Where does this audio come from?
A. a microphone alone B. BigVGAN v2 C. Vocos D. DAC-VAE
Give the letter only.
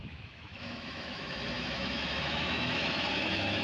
D